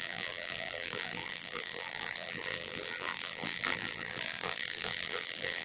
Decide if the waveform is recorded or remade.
remade